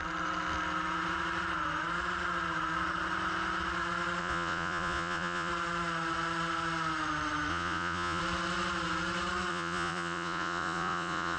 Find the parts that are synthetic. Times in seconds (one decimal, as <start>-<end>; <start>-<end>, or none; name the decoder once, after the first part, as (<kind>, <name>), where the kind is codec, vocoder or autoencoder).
4.2-5.5 (vocoder, Vocos); 7.5-8.2; 9.5-11.4